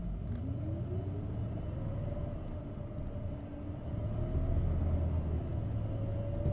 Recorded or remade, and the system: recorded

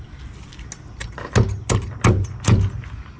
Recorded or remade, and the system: recorded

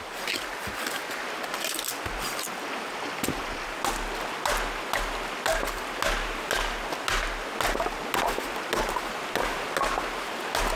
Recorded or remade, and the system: recorded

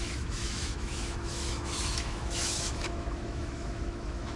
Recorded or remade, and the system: remade, autoencoder, DAC-VAE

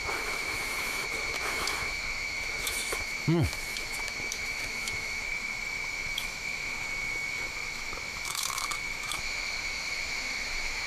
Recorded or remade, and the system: remade, autoencoder, DAC-VAE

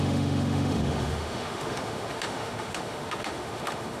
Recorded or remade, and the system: remade, autoencoder, DAC-VAE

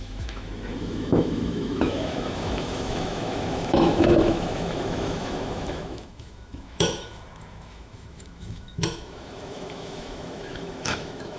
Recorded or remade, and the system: remade, autoencoder, DAC-VAE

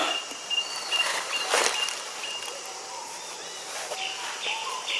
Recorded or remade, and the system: recorded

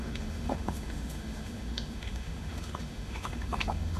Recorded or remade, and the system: remade, autoencoder, DAC-VAE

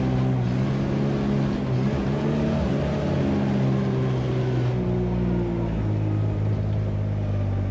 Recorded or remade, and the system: recorded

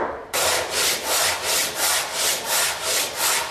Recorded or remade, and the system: recorded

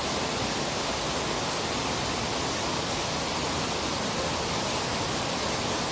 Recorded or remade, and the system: recorded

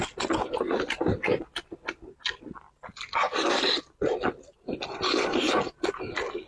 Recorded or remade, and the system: recorded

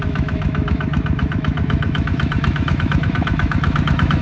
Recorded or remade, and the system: remade, autoencoder, DAC-VAE